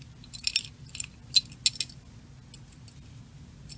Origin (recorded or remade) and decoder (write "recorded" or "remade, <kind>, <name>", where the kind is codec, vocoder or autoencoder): recorded